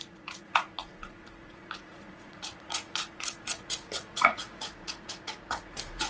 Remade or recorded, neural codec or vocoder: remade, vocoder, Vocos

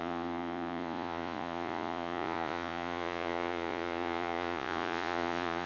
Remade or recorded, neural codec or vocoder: remade, vocoder, Vocos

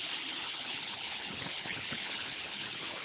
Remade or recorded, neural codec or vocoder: remade, codec, HILCodec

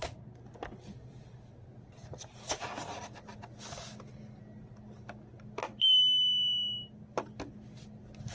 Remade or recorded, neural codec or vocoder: recorded